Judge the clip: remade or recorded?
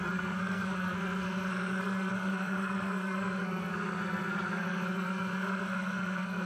remade